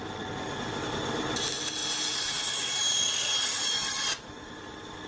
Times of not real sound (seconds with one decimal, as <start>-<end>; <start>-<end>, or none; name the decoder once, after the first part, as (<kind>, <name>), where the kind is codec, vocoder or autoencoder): none